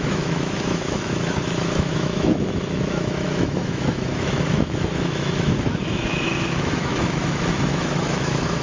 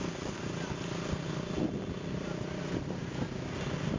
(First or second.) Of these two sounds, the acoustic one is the second